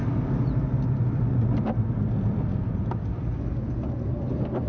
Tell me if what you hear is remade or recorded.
recorded